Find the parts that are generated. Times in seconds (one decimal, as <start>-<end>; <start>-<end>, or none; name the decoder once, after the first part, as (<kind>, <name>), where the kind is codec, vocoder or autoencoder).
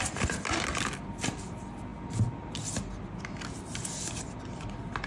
none